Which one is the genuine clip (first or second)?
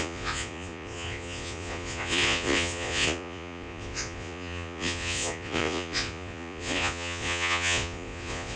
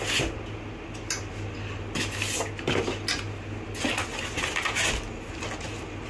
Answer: second